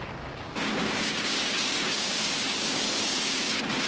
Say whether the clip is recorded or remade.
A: remade